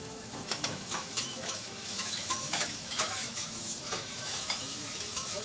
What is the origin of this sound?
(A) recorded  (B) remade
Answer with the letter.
B